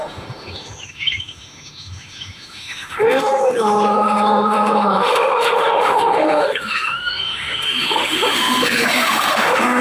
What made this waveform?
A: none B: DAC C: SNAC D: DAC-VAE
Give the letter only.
D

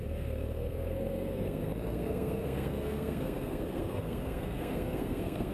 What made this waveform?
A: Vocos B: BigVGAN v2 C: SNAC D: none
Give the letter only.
C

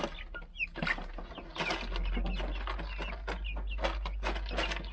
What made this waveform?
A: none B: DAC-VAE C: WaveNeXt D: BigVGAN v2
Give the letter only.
A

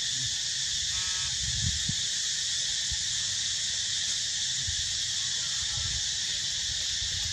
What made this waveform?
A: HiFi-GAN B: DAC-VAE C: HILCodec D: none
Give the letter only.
D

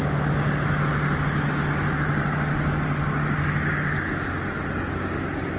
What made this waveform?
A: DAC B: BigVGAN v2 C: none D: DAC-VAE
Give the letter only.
C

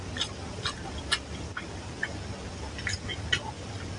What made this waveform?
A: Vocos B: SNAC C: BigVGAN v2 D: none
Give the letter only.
D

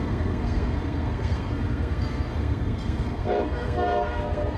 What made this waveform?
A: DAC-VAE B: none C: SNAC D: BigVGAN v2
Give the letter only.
C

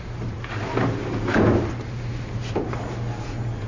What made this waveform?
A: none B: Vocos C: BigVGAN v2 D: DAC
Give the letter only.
A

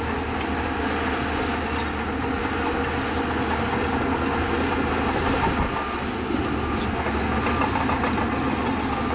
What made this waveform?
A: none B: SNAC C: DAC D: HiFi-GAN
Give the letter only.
A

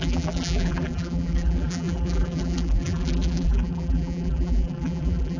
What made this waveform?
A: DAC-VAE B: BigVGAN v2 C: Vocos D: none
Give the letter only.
B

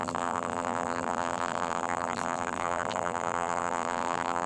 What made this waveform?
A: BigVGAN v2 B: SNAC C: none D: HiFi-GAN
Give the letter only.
A